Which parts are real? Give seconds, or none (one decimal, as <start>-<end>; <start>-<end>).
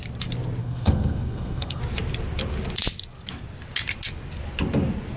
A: 0.0-0.6; 1.8-5.2